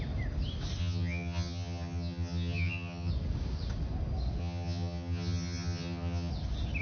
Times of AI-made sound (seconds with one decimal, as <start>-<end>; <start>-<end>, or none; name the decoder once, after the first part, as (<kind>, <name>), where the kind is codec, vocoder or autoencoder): 0.8-3.1 (vocoder, HiFi-GAN); 4.4-6.3